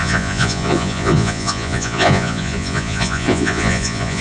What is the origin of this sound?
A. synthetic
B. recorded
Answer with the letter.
A